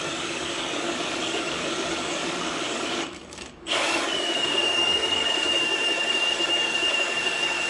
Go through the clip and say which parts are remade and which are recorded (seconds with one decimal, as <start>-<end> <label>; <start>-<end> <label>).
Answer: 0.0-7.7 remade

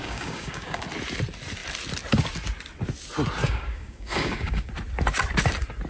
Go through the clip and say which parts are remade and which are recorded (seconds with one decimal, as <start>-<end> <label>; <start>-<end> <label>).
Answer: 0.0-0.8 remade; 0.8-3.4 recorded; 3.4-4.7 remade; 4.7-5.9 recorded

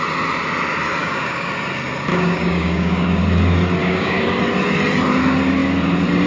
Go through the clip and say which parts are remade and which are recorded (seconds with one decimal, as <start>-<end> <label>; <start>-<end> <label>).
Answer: 0.0-1.0 recorded; 1.0-1.5 remade; 1.5-2.1 recorded; 2.1-3.2 remade; 3.2-3.8 recorded; 3.8-4.4 remade; 4.4-6.3 recorded

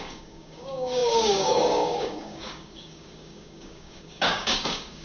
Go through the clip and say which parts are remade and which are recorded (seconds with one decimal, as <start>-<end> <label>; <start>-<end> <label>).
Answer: 0.0-5.0 remade

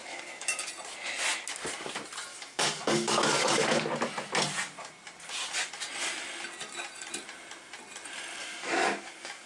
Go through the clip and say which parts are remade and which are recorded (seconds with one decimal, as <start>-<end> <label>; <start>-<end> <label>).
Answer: 0.0-0.7 remade; 0.7-2.3 recorded; 2.3-3.8 remade; 3.8-8.4 recorded; 8.4-9.5 remade

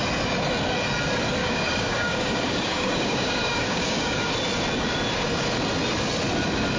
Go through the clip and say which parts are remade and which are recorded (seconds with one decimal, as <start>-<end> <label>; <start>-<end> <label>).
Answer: 0.0-1.4 recorded; 1.4-4.3 remade; 4.3-6.8 recorded

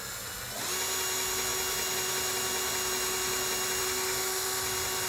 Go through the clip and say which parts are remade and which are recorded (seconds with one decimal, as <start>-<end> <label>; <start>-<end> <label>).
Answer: 0.0-5.1 recorded

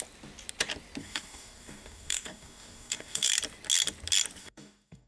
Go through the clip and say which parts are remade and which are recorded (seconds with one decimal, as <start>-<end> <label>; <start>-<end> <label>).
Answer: 0.0-1.0 recorded; 1.0-3.3 remade; 3.3-4.4 recorded; 4.4-5.1 remade